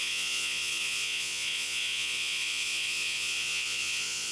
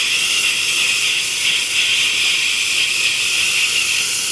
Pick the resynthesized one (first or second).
first